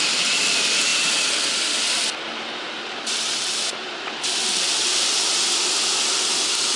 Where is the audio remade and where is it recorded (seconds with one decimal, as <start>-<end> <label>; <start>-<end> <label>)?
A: 0.0-0.9 recorded; 0.9-5.0 remade; 5.0-6.8 recorded